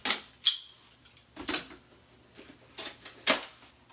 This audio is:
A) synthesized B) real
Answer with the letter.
B